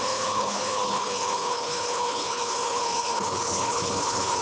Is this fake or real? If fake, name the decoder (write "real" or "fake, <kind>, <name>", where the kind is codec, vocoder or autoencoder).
fake, codec, HILCodec